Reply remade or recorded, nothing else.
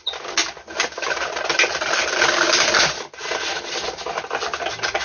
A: recorded